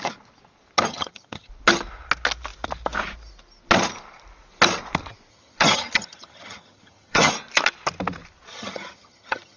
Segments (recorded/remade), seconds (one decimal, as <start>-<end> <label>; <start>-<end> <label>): 0.0-0.9 recorded; 0.9-1.5 remade; 1.5-5.3 recorded; 5.3-7.3 remade; 7.3-8.5 recorded; 8.5-9.6 remade

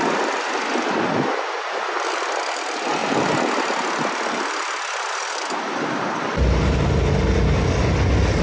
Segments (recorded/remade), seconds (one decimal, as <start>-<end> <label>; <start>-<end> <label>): 0.0-8.4 recorded

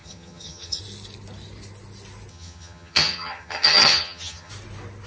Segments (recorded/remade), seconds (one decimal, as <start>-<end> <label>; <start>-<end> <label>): 0.0-0.8 remade; 0.8-2.3 recorded; 2.3-4.5 remade; 4.5-5.1 recorded

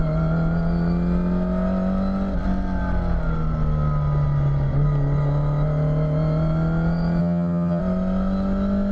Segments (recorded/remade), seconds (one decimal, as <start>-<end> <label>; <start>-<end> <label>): 0.0-7.2 recorded; 7.2-7.8 remade; 7.8-8.9 recorded

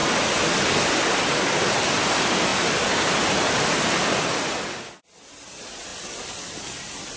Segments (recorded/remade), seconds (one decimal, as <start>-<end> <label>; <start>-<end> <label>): 0.0-7.2 recorded

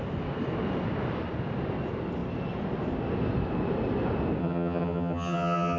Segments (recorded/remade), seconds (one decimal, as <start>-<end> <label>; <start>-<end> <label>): 0.0-4.4 recorded; 4.4-5.8 remade

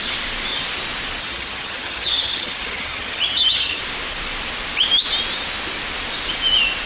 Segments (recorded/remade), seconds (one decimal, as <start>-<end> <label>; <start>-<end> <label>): 0.0-1.2 recorded; 1.2-3.8 remade; 3.8-6.9 recorded